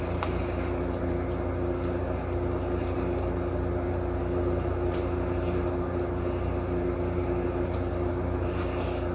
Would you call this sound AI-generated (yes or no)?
no